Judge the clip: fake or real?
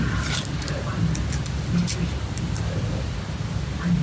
real